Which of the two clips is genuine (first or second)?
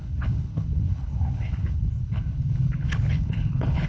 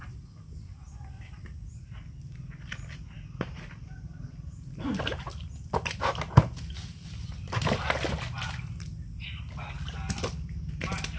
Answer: second